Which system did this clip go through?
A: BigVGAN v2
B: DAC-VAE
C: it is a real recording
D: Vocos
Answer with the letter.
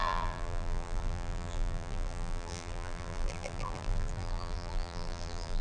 A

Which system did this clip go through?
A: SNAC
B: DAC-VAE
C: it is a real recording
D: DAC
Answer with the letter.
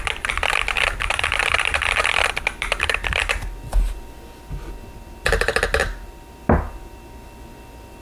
C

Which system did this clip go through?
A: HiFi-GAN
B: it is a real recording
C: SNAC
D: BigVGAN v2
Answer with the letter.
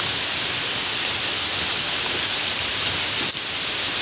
B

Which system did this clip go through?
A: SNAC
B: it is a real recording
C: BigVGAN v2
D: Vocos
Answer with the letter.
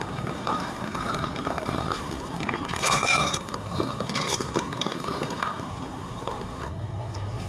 A